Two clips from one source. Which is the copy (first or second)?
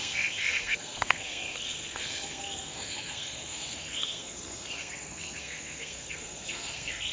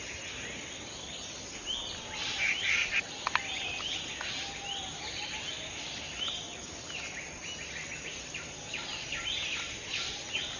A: first